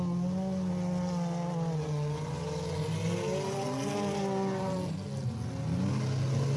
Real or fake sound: real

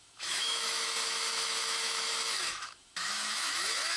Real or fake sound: fake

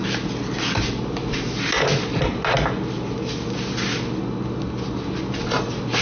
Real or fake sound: real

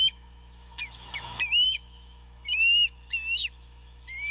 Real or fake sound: fake